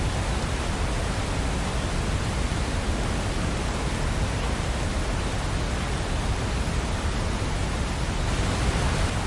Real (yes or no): yes